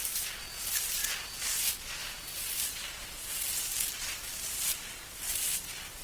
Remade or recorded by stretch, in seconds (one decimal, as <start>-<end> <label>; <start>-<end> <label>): 0.0-6.0 recorded